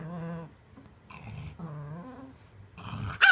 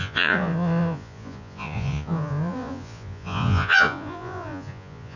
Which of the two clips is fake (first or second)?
second